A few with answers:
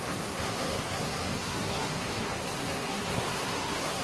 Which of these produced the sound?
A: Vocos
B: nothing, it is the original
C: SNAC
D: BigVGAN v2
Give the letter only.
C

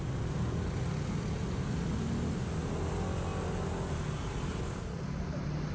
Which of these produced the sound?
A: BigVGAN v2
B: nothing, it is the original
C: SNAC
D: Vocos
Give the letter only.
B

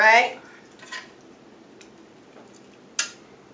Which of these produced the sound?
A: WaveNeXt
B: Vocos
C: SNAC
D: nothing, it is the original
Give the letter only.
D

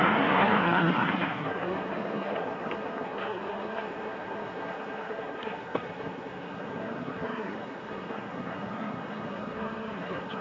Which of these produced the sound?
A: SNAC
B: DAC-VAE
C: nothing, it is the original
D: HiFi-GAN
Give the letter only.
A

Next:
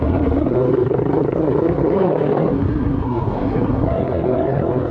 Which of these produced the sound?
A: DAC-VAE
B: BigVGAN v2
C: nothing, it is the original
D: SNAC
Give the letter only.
D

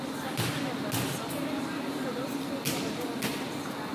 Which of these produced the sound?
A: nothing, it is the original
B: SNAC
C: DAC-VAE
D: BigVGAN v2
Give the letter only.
A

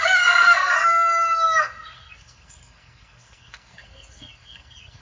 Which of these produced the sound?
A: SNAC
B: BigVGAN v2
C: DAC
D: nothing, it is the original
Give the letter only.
A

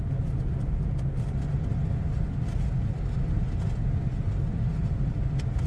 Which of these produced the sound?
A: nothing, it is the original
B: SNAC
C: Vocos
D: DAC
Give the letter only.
A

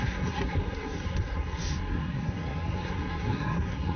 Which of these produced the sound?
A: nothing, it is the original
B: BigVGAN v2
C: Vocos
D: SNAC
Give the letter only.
D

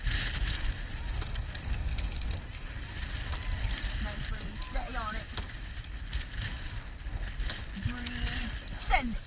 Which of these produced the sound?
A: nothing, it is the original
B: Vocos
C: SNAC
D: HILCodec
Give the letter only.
A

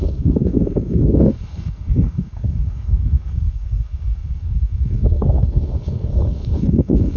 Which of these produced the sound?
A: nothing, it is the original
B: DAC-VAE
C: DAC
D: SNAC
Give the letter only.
D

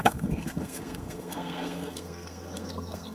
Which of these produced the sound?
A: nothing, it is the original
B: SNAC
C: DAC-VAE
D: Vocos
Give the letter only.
B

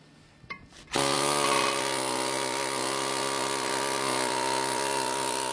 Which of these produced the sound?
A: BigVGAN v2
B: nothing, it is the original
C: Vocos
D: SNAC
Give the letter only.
B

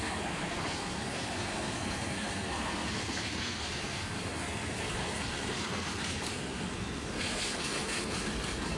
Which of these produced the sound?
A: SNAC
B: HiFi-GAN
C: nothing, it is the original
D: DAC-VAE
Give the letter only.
A